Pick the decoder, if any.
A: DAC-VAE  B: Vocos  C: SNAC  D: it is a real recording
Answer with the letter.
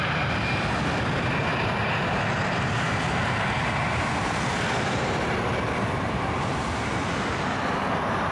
D